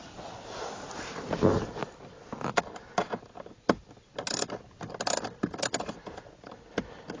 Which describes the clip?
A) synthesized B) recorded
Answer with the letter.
B